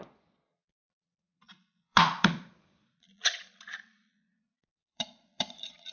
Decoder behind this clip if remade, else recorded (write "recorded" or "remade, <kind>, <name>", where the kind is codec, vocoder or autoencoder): remade, vocoder, Vocos